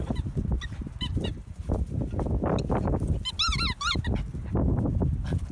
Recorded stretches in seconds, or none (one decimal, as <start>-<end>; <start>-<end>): 0.0-1.1; 1.7-5.5